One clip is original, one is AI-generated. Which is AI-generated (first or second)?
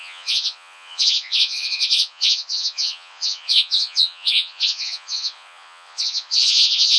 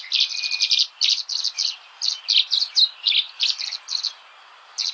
first